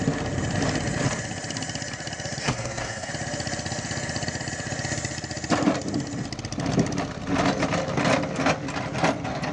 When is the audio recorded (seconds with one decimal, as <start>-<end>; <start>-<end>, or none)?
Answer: 0.0-2.4; 3.1-9.5